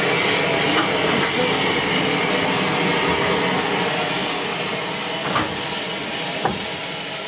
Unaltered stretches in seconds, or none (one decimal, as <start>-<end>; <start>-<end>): 0.0-7.3